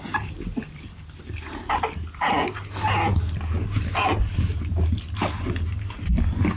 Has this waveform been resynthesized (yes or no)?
no